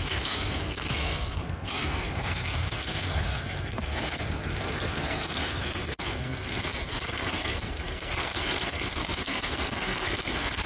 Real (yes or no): no